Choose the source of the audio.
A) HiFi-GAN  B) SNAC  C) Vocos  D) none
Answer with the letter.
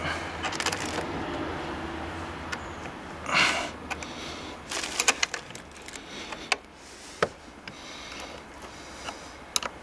D